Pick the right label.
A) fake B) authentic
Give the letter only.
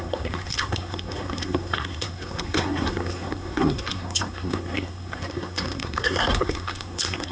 A